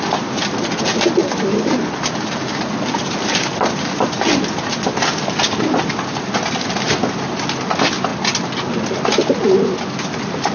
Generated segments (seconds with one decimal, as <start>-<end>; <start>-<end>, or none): none